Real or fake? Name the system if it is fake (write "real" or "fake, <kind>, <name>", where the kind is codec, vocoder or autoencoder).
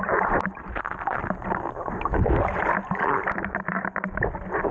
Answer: real